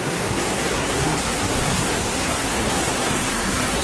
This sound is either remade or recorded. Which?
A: remade